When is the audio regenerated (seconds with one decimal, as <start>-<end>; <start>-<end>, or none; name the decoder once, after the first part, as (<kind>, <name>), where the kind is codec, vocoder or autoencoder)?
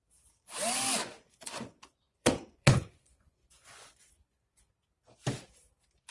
1.0-4.7 (vocoder, Vocos)